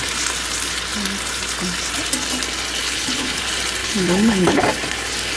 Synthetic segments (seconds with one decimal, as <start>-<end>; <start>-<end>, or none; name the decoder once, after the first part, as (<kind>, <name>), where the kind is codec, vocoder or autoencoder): 2.8-3.4 (codec, HILCodec); 3.8-4.6